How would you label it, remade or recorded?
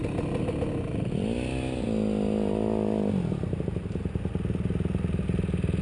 recorded